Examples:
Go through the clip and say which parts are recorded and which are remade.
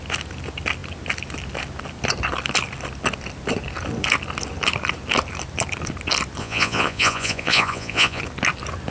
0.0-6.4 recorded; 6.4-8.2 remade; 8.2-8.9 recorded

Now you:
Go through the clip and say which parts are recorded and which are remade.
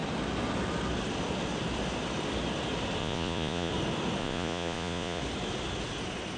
0.0-3.0 recorded; 3.0-3.7 remade; 3.7-4.2 recorded; 4.2-5.2 remade; 5.2-6.4 recorded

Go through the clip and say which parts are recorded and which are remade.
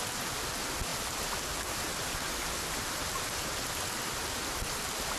0.0-5.2 recorded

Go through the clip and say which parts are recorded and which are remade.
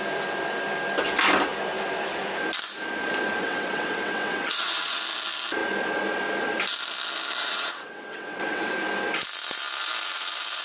0.0-3.4 recorded; 3.4-5.0 remade; 5.0-7.4 recorded; 7.4-8.7 remade; 8.7-10.6 recorded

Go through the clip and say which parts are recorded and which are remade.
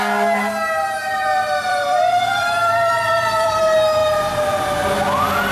0.0-1.0 recorded; 1.0-3.6 remade; 3.6-5.5 recorded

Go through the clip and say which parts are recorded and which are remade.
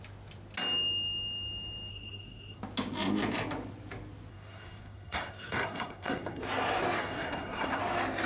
0.0-1.9 recorded; 1.9-2.6 remade; 2.6-4.3 recorded; 4.3-6.4 remade; 6.4-7.0 recorded; 7.0-7.8 remade; 7.8-8.3 recorded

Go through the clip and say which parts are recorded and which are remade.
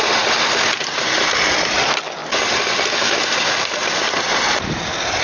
0.0-5.2 recorded